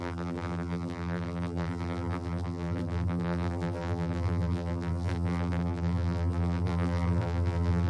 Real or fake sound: fake